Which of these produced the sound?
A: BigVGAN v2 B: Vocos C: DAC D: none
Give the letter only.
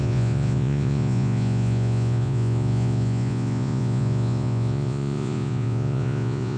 B